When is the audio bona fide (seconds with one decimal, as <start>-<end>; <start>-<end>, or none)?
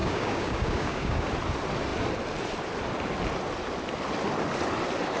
1.3-5.2